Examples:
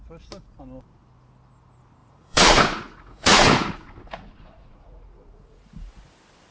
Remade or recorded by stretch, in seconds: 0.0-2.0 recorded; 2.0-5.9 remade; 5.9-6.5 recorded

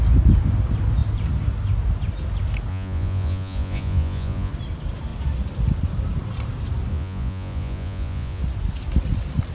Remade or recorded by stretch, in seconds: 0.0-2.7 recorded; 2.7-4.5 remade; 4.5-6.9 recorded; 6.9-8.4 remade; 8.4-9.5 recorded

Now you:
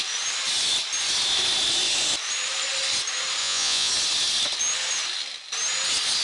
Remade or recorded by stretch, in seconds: 0.0-3.4 recorded; 3.4-3.9 remade; 3.9-6.2 recorded

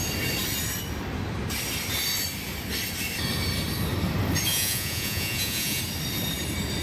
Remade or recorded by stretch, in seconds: 0.0-4.5 recorded; 4.5-5.8 remade; 5.8-6.8 recorded

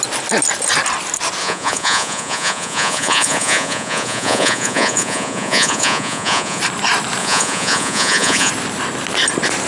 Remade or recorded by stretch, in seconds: 0.0-1.4 recorded; 1.4-6.6 remade; 6.6-7.2 recorded; 7.2-8.5 remade; 8.5-9.7 recorded

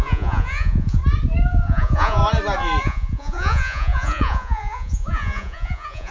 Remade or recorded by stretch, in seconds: 0.0-1.0 remade; 1.0-1.5 recorded; 1.5-2.2 remade; 2.2-2.8 recorded; 2.8-6.1 remade

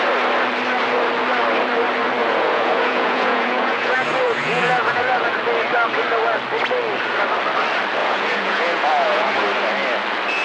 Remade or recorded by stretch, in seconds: 0.0-2.2 recorded; 2.2-5.4 remade; 5.4-8.0 recorded; 8.0-9.3 remade; 9.3-10.4 recorded